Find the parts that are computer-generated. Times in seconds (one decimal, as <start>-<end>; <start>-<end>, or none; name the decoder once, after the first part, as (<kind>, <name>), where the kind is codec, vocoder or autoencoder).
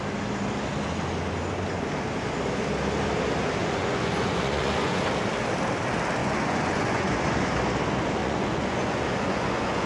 3.6-5.0 (vocoder, Vocos); 6.2-7.5; 8.2-9.9